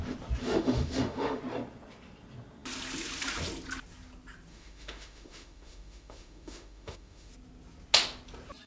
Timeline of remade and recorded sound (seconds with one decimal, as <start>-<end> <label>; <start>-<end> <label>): 0.0-0.4 recorded; 0.4-1.4 remade; 1.4-4.5 recorded; 4.5-7.3 remade; 7.3-8.7 recorded